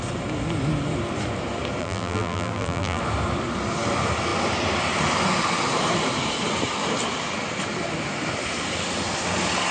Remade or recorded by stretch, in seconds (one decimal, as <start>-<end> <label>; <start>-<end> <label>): 0.0-1.8 recorded; 1.8-3.0 remade; 3.0-9.7 recorded